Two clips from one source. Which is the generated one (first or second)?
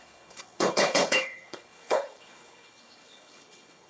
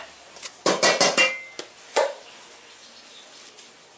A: first